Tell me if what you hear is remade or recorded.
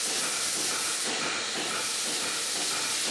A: recorded